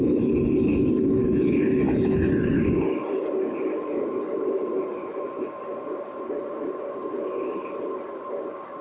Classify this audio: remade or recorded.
recorded